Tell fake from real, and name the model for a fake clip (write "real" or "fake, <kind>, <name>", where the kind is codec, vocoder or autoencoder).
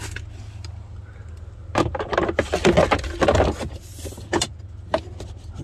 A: real